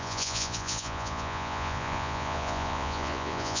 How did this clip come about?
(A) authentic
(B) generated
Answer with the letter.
B